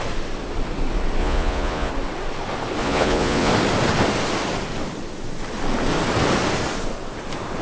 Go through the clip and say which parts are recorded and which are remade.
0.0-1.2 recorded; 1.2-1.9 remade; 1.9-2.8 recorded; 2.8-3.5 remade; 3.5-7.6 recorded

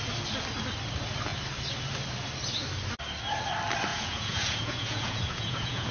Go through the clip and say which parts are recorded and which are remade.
0.0-3.9 recorded; 3.9-5.9 remade

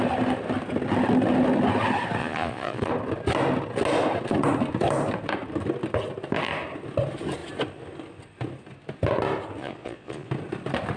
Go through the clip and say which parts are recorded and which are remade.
0.0-2.2 recorded; 2.2-2.9 remade; 2.9-9.6 recorded; 9.6-10.3 remade; 10.3-11.0 recorded

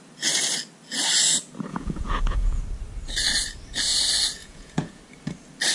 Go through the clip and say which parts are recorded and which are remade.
0.0-1.7 recorded; 1.7-2.6 remade; 2.6-4.4 recorded; 4.4-5.0 remade; 5.0-5.7 recorded